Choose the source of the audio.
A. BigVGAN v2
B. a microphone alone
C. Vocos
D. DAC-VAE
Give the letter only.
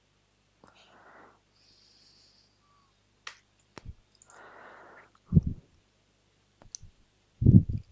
B